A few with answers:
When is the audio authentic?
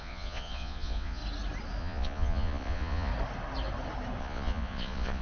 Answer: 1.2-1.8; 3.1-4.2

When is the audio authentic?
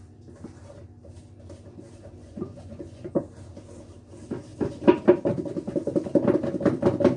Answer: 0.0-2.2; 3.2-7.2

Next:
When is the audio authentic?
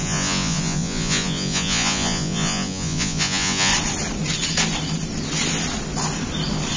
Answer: 3.7-6.8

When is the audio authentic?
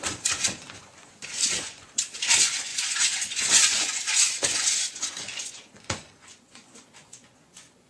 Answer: none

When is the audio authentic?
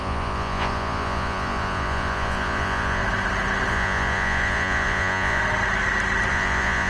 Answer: 3.0-3.7; 5.4-6.3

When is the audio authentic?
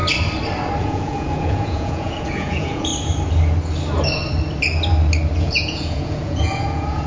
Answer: 0.0-0.8; 2.9-5.4